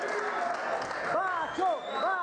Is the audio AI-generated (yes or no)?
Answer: no